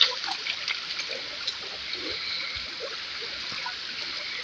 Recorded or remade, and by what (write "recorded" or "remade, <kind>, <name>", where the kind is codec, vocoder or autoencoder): recorded